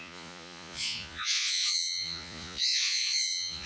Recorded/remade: remade